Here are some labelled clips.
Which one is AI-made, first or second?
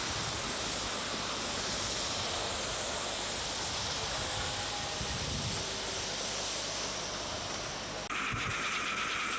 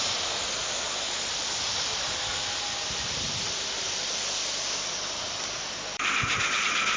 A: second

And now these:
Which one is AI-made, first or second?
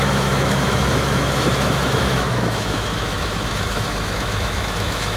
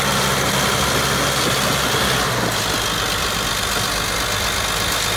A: first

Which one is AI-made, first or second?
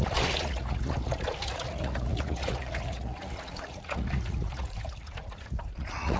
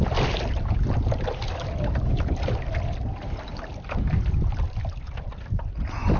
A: first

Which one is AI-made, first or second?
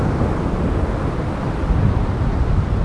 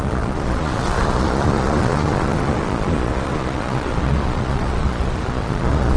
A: second